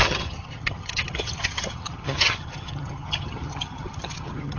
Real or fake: fake